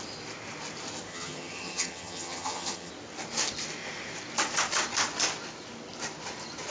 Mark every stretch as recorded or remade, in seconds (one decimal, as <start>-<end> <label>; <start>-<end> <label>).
0.0-1.1 recorded; 1.1-2.9 remade; 2.9-6.7 recorded